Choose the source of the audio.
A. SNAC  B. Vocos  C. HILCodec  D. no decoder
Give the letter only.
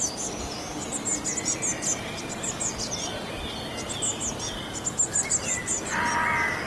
D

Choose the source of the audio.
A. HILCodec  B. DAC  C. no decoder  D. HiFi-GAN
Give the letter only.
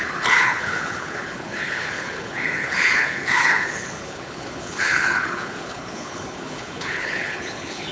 A